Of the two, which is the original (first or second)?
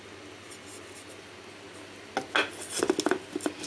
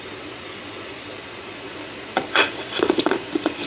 first